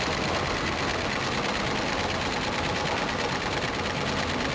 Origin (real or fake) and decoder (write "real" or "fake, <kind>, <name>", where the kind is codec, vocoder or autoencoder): real